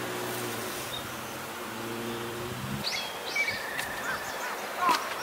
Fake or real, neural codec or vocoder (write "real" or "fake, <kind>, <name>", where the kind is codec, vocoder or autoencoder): real